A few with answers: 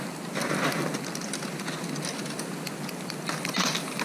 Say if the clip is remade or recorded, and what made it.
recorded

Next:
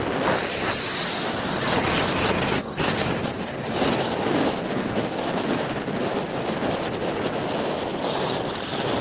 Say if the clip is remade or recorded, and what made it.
recorded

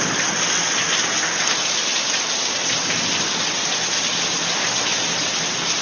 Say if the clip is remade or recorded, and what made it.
recorded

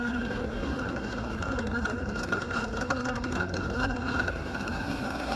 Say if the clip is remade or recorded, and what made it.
remade, codec, SNAC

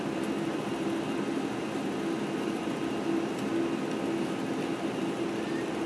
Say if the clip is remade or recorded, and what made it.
recorded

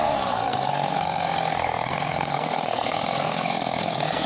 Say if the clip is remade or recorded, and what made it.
remade, codec, SNAC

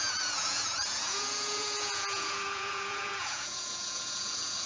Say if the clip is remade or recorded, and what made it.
remade, vocoder, Vocos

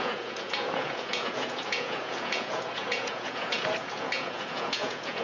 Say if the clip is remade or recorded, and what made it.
remade, vocoder, Vocos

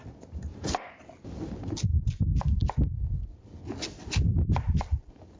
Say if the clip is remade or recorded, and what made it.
recorded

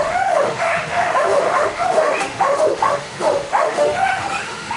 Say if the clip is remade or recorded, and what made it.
remade, autoencoder, DAC-VAE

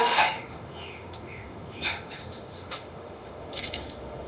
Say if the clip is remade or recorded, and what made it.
remade, autoencoder, DAC-VAE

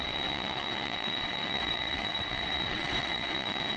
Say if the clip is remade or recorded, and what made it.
remade, vocoder, WaveNeXt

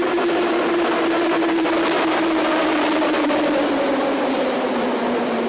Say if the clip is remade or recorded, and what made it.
recorded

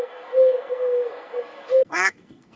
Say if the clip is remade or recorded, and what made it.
remade, codec, SNAC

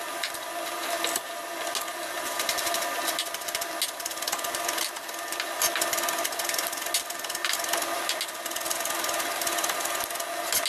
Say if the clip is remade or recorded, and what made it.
recorded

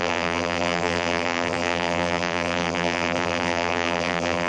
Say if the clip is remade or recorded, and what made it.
remade, vocoder, BigVGAN v2